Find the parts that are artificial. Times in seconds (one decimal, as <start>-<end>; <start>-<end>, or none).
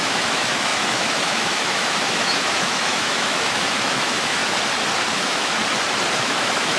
0.0-4.4; 5.1-5.6; 6.1-6.8